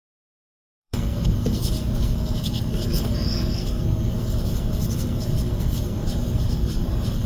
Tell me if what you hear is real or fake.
fake